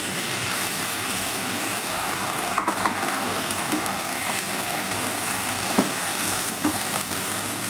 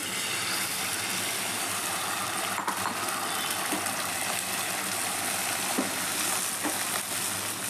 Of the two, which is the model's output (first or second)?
first